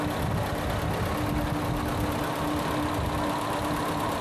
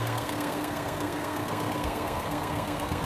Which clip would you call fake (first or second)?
second